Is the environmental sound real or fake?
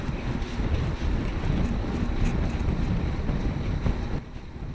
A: real